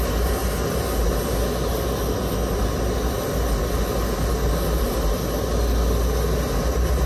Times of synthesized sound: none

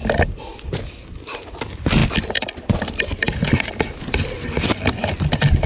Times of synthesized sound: none

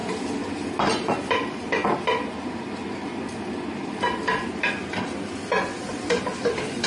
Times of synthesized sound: 0.9-1.8; 5.9-6.9

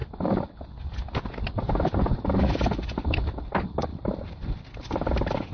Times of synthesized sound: 3.9-4.7

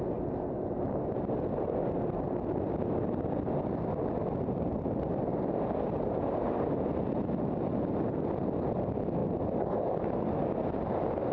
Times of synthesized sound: none

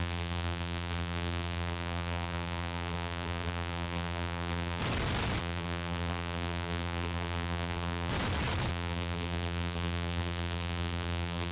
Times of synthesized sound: 0.0-4.8; 5.4-8.1; 8.7-11.5

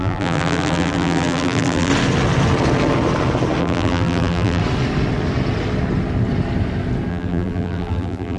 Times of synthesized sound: 0.0-1.9; 3.6-4.6; 7.1-8.4